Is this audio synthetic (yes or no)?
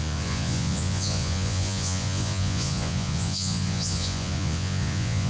yes